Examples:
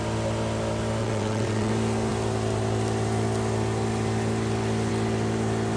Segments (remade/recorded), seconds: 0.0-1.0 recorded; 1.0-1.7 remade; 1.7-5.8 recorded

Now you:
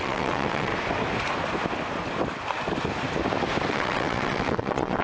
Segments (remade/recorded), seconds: 0.0-0.7 remade; 0.7-3.7 recorded; 3.7-5.0 remade

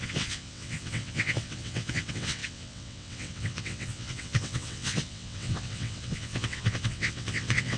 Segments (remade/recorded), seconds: 0.0-7.8 remade

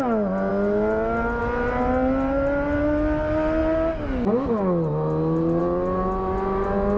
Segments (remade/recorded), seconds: 0.0-7.0 recorded

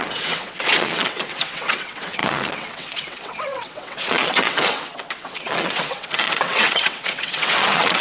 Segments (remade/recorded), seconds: 0.0-8.0 remade